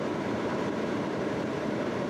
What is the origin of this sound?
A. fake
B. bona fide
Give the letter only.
A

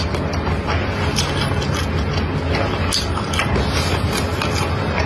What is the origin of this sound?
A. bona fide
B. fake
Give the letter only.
A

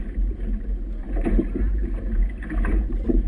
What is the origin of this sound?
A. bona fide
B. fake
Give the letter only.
B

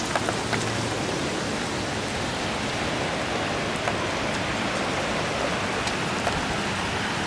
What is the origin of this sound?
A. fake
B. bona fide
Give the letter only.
B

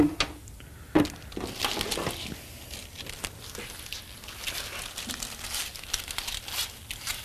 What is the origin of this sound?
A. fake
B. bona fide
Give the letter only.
B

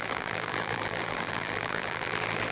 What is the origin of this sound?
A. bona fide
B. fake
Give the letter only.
B